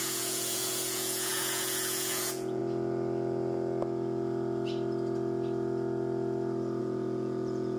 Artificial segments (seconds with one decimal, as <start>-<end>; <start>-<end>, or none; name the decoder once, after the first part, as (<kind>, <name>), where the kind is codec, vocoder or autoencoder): 0.0-2.6 (vocoder, Vocos); 6.8-7.8